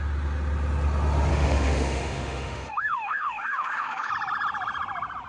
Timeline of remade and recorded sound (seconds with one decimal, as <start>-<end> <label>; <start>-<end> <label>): 0.0-1.3 recorded; 1.3-4.1 remade; 4.1-5.3 recorded